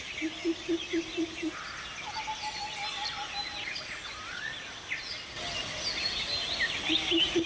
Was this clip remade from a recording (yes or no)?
no